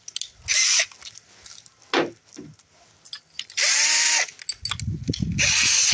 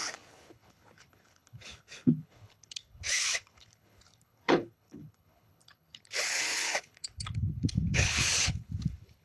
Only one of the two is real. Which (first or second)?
first